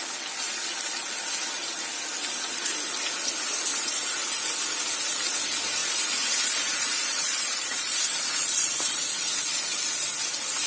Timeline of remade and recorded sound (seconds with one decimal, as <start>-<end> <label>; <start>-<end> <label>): 0.0-3.7 recorded; 3.7-4.4 remade; 4.4-5.8 recorded; 5.8-9.5 remade; 9.5-10.7 recorded